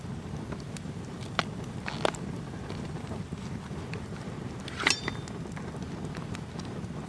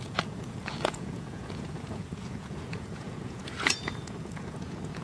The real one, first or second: first